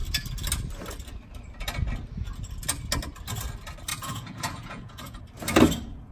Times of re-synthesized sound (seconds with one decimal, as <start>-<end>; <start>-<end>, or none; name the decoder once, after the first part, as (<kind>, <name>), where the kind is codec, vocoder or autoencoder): 3.9-5.2 (vocoder, Vocos)

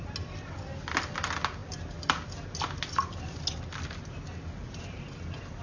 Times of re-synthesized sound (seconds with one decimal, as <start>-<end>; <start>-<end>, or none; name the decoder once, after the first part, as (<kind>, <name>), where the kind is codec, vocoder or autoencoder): none

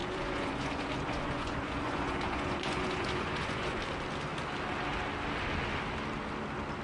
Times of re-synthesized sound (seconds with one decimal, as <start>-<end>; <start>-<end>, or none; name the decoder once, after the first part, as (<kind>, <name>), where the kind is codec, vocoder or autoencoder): 0.0-3.8 (vocoder, Vocos)

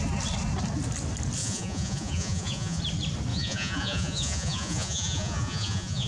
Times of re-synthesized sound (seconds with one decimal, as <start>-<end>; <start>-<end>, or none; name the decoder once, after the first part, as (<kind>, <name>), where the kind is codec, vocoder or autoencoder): 1.4-2.8 (vocoder, Vocos); 3.3-6.1

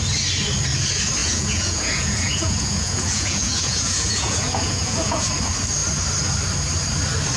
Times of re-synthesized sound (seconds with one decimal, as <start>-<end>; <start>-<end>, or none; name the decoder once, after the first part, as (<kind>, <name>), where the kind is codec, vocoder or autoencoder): 1.2-5.3 (vocoder, Vocos)